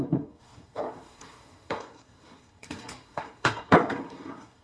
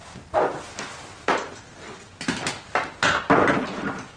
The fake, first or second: first